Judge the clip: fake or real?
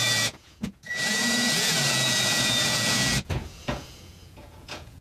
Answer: fake